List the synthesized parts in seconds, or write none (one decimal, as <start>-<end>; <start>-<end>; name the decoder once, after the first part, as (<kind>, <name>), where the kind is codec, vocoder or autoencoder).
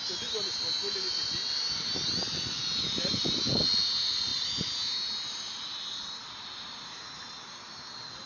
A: 6.2-7.0 (vocoder, BigVGAN v2)